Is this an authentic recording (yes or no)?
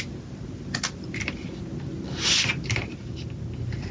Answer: yes